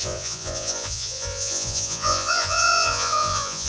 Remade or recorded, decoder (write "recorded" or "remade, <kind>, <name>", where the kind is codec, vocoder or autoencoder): remade, vocoder, Vocos